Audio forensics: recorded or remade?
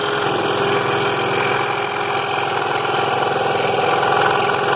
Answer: recorded